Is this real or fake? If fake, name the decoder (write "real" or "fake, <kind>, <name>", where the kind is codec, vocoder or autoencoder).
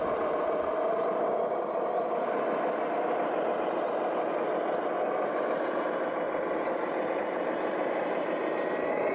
real